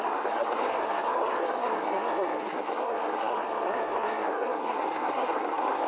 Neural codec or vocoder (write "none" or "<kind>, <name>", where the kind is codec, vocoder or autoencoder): codec, SNAC